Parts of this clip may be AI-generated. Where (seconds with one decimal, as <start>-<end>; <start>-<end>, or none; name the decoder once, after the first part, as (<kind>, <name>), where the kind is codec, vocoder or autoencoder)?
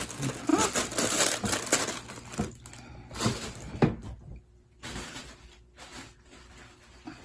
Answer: none